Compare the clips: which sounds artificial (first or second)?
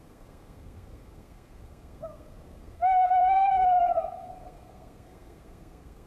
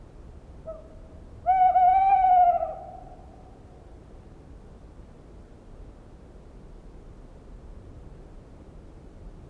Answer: first